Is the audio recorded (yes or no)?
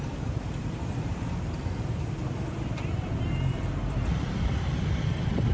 no